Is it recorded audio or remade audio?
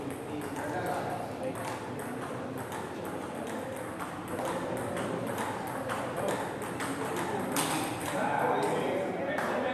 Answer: recorded